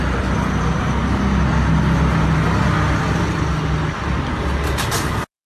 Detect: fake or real real